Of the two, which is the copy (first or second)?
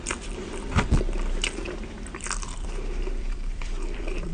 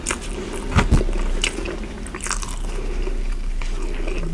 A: first